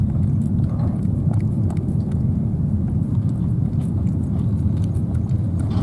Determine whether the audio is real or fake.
real